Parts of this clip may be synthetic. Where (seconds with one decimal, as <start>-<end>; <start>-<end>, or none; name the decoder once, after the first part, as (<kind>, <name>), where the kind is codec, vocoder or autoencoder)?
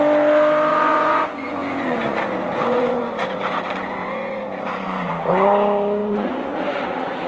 0.7-5.1 (vocoder, Vocos); 6.0-7.3